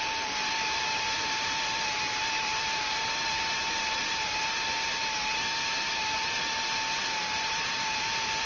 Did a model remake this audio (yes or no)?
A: yes